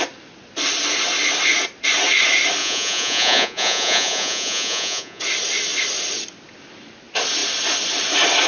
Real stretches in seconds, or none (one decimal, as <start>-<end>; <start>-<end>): 0.0-2.6; 5.2-8.5